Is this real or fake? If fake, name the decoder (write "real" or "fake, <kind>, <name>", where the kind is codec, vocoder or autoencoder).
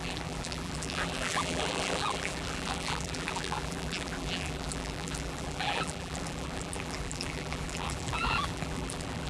fake, vocoder, BigVGAN v2